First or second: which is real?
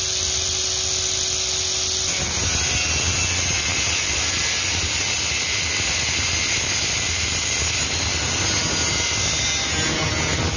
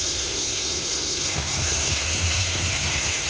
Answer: first